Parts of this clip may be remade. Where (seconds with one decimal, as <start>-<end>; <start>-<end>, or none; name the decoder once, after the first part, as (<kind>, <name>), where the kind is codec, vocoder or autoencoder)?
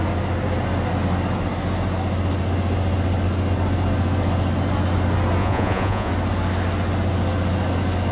5.4-6.1 (vocoder, Vocos)